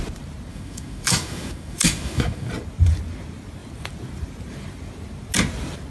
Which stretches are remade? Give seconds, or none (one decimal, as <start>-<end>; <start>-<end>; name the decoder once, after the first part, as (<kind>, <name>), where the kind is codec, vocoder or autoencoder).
0.5-2.5 (autoencoder, DAC-VAE)